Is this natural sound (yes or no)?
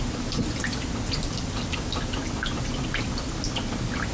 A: yes